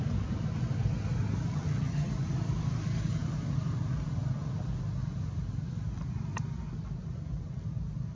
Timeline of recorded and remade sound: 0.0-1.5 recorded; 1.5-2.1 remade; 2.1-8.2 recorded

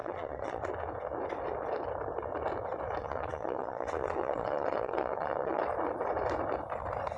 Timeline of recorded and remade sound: 0.0-0.7 remade; 0.7-3.0 recorded; 3.0-5.6 remade; 5.6-7.2 recorded

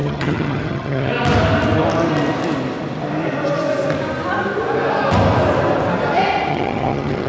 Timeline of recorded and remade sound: 0.0-1.1 remade; 1.1-6.5 recorded; 6.5-7.3 remade

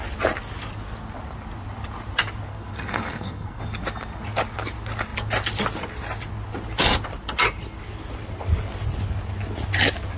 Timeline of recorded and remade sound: 0.0-2.5 recorded; 2.5-3.6 remade; 3.6-10.2 recorded

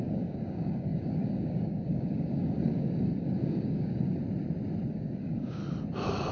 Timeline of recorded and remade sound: 0.0-4.2 remade; 4.2-4.9 recorded; 4.9-5.6 remade; 5.6-6.3 recorded